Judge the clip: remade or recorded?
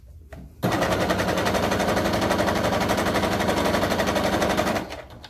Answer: recorded